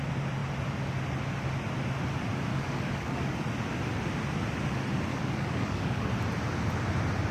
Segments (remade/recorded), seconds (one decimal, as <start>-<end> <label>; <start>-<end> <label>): 0.0-2.5 recorded; 2.5-3.4 remade; 3.4-5.1 recorded; 5.1-6.1 remade; 6.1-7.3 recorded